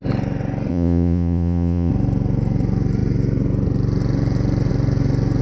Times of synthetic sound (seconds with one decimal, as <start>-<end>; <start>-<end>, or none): 0.7-1.9